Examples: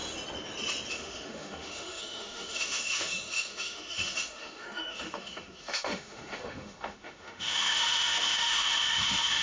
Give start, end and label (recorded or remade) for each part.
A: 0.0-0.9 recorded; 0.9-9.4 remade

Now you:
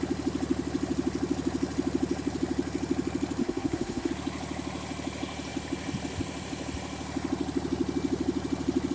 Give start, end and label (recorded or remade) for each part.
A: 0.0-3.4 recorded; 3.4-4.1 remade; 4.1-8.9 recorded

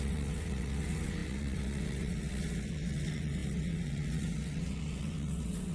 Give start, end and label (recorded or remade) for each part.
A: 0.0-5.7 remade

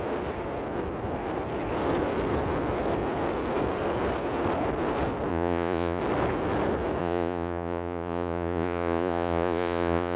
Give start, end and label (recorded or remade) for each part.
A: 0.0-5.3 recorded; 5.3-6.0 remade; 6.0-7.0 recorded; 7.0-10.2 remade

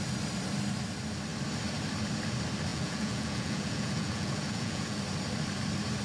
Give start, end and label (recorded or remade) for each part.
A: 0.0-2.7 recorded; 2.7-5.0 remade; 5.0-6.0 recorded

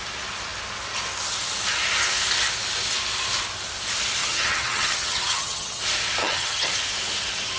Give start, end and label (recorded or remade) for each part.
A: 0.0-4.2 recorded; 4.2-5.8 remade; 5.8-6.2 recorded; 6.2-6.7 remade; 6.7-7.6 recorded

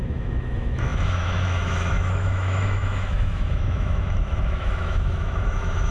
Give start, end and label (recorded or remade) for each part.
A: 0.0-5.9 remade

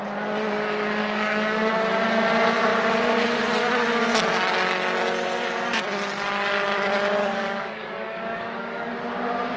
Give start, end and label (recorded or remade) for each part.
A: 0.0-1.0 recorded; 1.0-1.7 remade; 1.7-7.2 recorded; 7.2-8.9 remade; 8.9-9.6 recorded